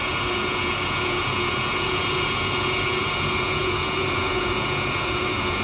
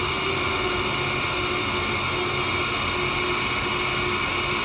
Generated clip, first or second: first